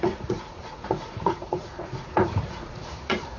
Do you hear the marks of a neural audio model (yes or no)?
yes